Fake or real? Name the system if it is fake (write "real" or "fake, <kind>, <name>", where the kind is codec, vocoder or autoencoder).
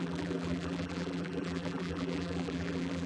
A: fake, vocoder, BigVGAN v2